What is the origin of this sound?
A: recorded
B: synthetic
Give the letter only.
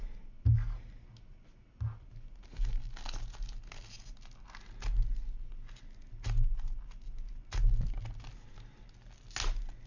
A